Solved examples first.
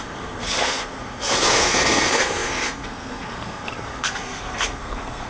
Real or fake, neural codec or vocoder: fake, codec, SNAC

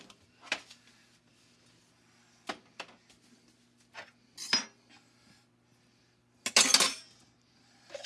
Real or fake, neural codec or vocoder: real